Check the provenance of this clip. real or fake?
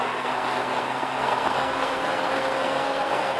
fake